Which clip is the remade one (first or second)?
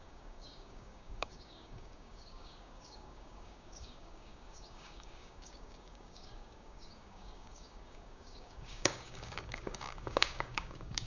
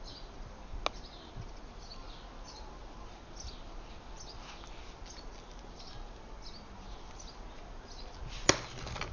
first